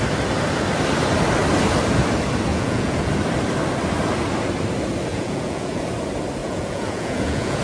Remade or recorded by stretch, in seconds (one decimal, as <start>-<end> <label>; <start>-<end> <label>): 0.0-2.5 recorded; 2.5-3.1 remade; 3.1-5.1 recorded; 5.1-5.8 remade; 5.8-6.4 recorded; 6.4-7.6 remade